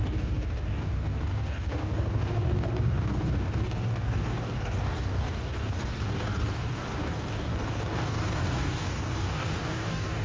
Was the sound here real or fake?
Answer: fake